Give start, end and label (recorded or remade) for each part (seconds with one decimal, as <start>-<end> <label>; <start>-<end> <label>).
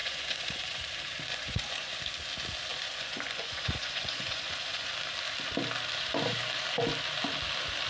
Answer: 0.0-0.8 remade; 0.8-1.3 recorded; 1.3-2.0 remade; 2.0-2.7 recorded; 2.7-4.9 remade; 4.9-7.9 recorded